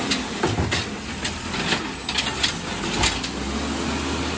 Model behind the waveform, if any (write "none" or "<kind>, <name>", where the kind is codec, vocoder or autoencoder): none